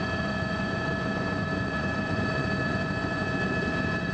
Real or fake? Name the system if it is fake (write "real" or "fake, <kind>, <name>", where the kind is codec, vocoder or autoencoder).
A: fake, vocoder, Vocos